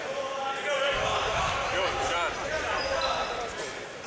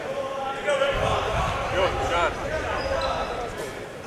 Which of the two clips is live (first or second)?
first